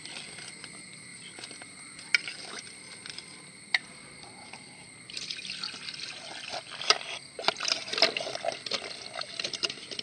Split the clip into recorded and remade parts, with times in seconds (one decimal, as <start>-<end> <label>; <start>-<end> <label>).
0.0-10.0 recorded